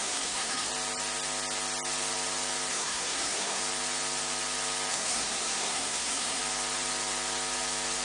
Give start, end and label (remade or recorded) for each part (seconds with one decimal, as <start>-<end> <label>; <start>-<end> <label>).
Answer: 0.0-0.7 remade; 0.7-2.7 recorded; 2.7-3.6 remade; 3.6-4.9 recorded; 4.9-6.4 remade; 6.4-8.0 recorded